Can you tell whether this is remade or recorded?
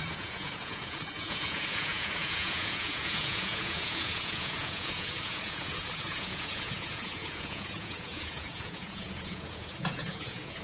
remade